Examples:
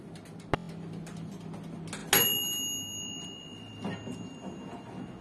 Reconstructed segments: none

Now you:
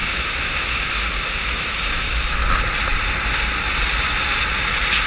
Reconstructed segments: 0.0-0.9 (autoencoder, DAC-VAE); 1.4-2.4